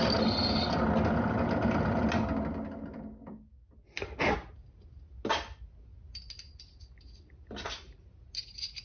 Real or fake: real